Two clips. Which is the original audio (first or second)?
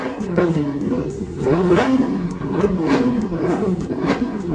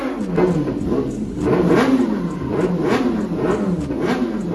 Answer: second